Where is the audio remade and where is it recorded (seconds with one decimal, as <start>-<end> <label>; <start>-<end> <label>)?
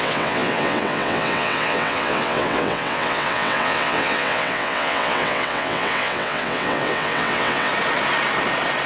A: 0.0-7.7 remade; 7.7-8.9 recorded